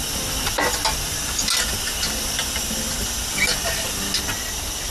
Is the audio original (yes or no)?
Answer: yes